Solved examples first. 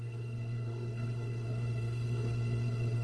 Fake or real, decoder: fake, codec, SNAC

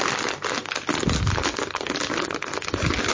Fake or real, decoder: real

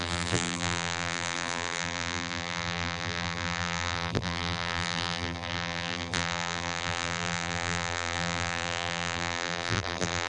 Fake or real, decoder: fake, vocoder, BigVGAN v2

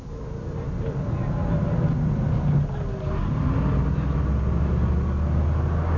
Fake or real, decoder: real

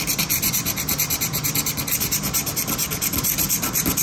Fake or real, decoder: real